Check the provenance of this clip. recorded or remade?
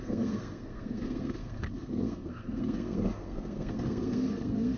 remade